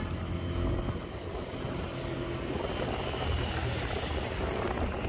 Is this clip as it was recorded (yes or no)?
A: yes